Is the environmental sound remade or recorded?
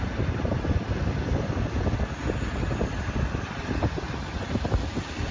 recorded